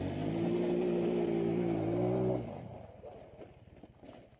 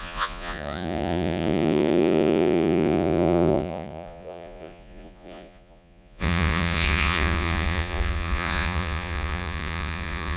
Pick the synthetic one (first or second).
second